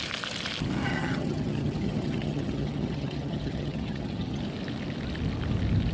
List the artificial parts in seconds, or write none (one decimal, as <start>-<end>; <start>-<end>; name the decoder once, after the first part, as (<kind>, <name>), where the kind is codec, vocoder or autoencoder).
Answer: 0.9-4.4 (vocoder, HiFi-GAN)